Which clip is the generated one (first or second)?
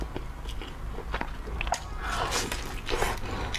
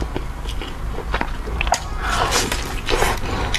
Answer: second